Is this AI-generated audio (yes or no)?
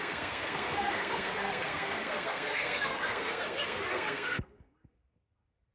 yes